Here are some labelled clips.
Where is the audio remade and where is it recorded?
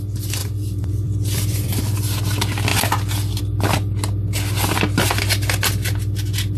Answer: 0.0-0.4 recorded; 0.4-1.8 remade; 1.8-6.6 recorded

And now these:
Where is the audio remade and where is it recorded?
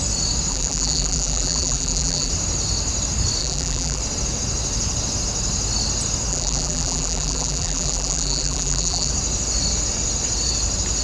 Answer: 0.0-0.5 recorded; 0.5-2.3 remade; 2.3-3.4 recorded; 3.4-4.0 remade; 4.0-6.3 recorded; 6.3-9.1 remade; 9.1-11.0 recorded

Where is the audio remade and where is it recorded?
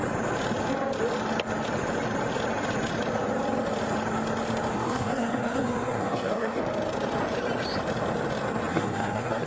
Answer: 0.0-4.7 recorded; 4.7-6.6 remade; 6.6-8.7 recorded; 8.7-9.5 remade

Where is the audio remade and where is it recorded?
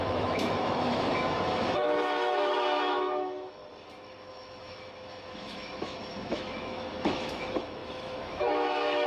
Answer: 0.0-3.6 remade; 3.6-4.3 recorded; 4.3-9.1 remade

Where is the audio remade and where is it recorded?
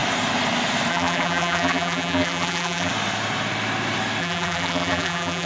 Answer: 0.0-0.9 recorded; 0.9-2.9 remade; 2.9-4.2 recorded; 4.2-5.5 remade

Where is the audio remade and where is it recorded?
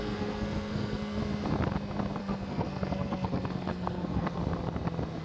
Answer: 0.0-1.2 remade; 1.2-2.2 recorded; 2.2-4.4 remade; 4.4-5.2 recorded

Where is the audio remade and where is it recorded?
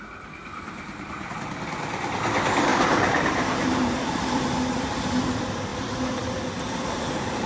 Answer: 0.0-0.4 recorded; 0.4-1.5 remade; 1.5-2.7 recorded; 2.7-4.4 remade; 4.4-7.5 recorded